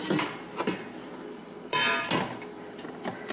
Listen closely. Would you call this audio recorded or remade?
recorded